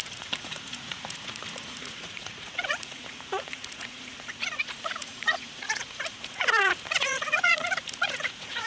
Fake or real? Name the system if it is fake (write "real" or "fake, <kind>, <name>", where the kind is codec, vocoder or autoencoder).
fake, vocoder, Vocos